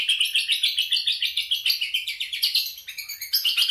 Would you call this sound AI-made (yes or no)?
no